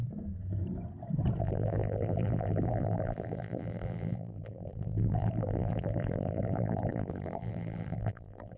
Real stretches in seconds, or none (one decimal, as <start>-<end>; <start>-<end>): 0.0-1.4